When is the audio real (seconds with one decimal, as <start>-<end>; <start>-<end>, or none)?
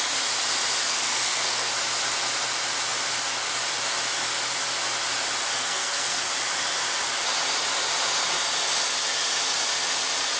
0.0-0.8; 1.7-5.5; 6.3-10.4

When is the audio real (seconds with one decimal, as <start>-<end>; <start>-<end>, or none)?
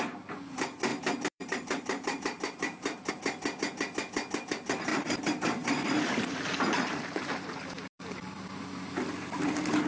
0.0-0.9; 3.1-4.9; 8.9-9.9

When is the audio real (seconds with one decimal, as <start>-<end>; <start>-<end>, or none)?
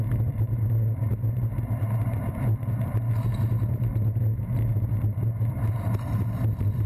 1.1-2.0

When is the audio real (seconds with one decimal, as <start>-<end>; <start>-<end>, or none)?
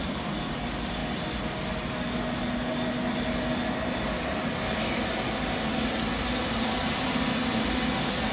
0.0-8.3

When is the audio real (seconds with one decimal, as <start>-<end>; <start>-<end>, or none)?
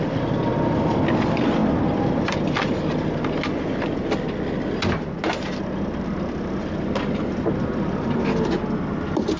0.0-9.4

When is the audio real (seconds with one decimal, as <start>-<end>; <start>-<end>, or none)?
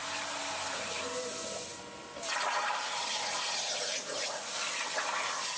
0.0-5.6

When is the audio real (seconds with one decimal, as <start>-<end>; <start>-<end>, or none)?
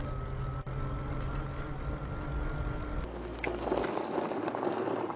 0.0-5.2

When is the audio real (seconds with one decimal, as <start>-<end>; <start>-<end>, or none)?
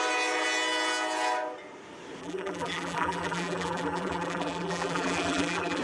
0.0-2.2